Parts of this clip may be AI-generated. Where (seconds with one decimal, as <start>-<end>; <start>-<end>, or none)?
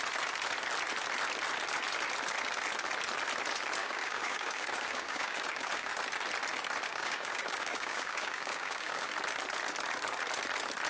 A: 3.8-5.9; 6.9-9.1